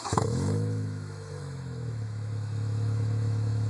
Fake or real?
fake